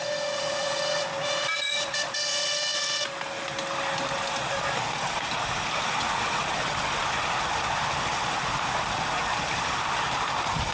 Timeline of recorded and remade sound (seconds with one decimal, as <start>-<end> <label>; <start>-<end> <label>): 0.0-10.7 recorded